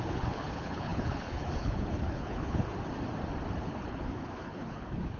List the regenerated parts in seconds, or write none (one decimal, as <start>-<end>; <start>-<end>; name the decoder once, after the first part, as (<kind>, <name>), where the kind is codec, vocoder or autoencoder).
0.0-2.7 (codec, HILCodec); 3.6-5.2